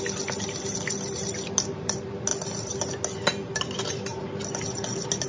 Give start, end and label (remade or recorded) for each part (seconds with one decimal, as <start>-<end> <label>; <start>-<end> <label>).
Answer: 0.0-5.3 recorded